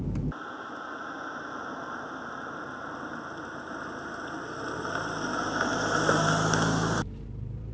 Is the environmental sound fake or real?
real